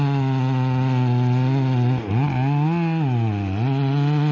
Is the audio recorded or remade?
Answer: recorded